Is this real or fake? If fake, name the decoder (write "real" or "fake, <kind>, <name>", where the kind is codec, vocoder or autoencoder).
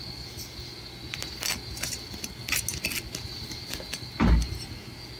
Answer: real